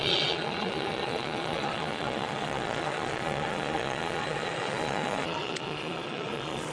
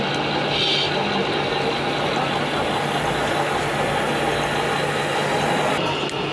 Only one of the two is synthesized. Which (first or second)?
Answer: first